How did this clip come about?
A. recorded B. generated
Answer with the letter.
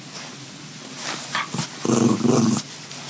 A